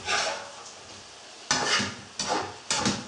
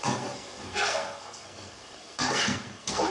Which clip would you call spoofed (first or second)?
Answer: second